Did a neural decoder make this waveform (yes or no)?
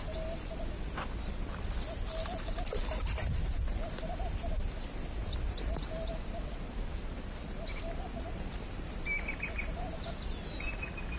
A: no